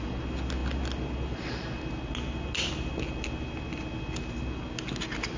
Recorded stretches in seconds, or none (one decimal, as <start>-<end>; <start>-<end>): 0.0-5.4